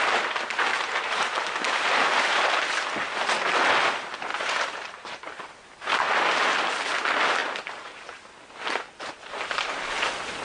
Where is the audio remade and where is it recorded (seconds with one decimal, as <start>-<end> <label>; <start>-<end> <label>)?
0.0-0.7 recorded; 0.7-2.6 remade; 2.6-4.3 recorded; 4.3-4.8 remade; 4.8-10.4 recorded